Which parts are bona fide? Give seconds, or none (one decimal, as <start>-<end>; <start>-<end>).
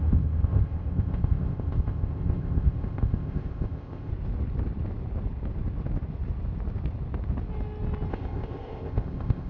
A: 4.1-8.1